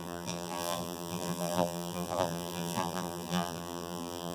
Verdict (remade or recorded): remade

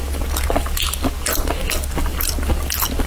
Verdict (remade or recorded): recorded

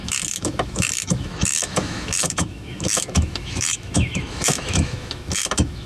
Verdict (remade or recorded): remade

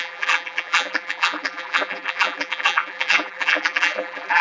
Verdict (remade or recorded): remade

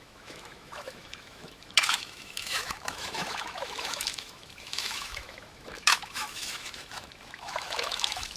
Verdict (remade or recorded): remade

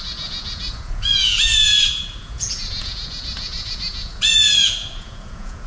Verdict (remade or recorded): remade